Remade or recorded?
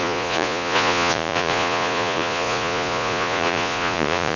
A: remade